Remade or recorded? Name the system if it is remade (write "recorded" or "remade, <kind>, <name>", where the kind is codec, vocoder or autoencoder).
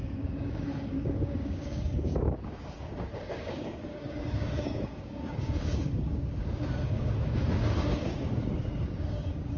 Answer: remade, codec, DAC